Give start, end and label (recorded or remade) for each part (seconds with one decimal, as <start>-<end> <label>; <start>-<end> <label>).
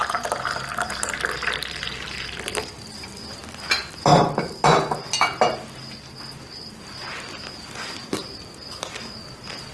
0.0-9.7 recorded